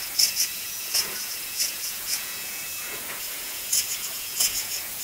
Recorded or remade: remade